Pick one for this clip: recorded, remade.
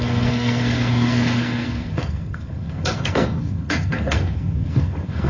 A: remade